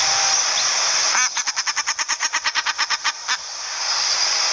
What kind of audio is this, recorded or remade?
recorded